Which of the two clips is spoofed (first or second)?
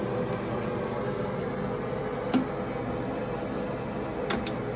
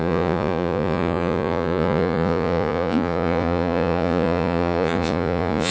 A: second